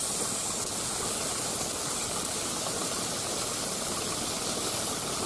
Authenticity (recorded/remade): recorded